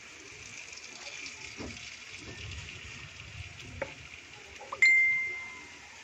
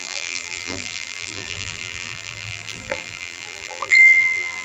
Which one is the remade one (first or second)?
second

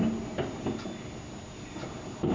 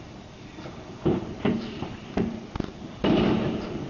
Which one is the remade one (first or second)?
second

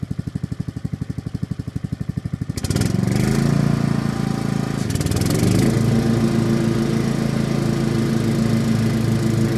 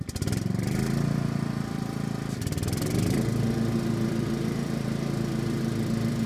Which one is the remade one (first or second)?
second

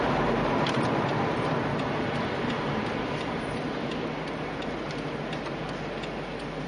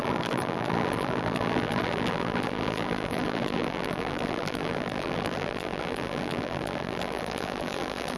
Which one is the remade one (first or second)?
second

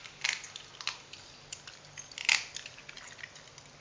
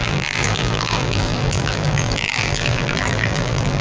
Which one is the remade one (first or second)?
second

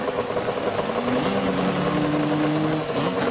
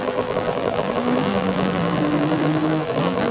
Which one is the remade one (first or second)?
second